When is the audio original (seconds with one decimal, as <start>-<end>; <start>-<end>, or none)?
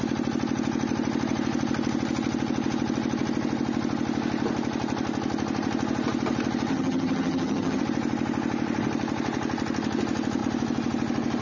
0.0-6.7; 7.8-11.4